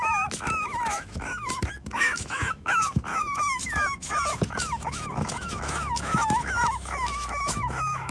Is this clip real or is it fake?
fake